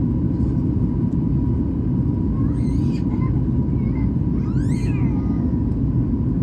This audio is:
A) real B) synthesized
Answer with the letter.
A